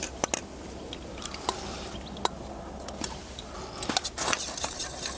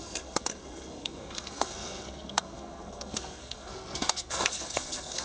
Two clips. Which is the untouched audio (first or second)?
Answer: first